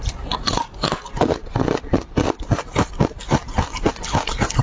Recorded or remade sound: recorded